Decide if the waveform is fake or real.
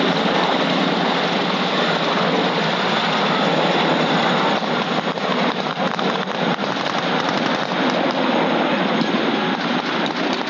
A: real